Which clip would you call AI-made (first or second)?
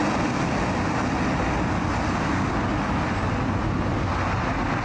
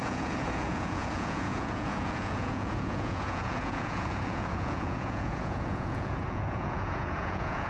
second